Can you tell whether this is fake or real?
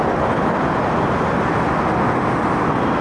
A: real